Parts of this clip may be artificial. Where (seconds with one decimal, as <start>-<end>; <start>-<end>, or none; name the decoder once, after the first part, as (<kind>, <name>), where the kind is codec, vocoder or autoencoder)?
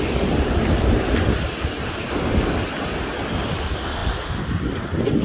none